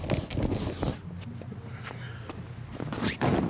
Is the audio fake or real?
real